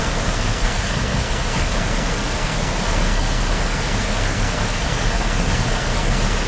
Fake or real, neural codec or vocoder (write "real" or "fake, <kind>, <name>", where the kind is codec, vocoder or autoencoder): fake, codec, SNAC